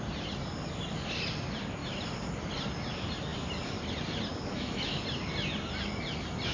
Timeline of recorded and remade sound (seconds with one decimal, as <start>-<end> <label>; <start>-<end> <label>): 0.0-4.3 recorded; 4.3-5.0 remade; 5.0-6.5 recorded